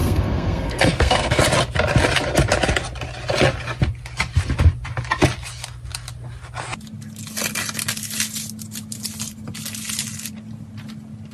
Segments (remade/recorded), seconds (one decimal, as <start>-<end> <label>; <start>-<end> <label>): 0.0-1.4 remade; 1.4-11.3 recorded